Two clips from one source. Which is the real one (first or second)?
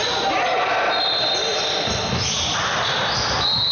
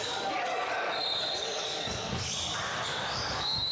first